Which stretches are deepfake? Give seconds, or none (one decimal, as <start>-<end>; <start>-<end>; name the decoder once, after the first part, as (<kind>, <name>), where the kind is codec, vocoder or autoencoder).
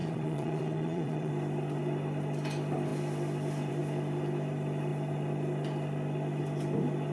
0.0-1.3 (vocoder, Vocos)